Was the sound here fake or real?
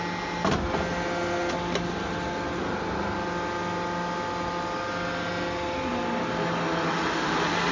real